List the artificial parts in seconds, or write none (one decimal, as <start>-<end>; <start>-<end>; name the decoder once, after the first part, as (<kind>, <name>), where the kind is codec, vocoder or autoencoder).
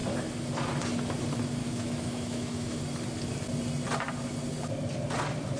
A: 1.6-2.8 (autoencoder, DAC-VAE)